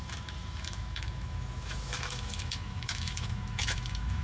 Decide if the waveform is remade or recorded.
remade